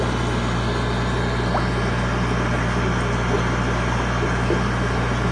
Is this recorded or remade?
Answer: recorded